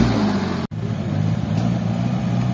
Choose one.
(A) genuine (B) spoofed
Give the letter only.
A